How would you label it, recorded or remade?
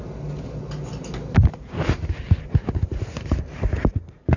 recorded